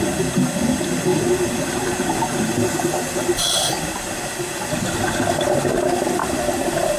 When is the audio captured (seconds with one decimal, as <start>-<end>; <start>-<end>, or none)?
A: 0.0-6.2